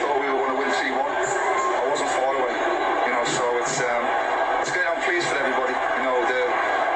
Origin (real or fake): real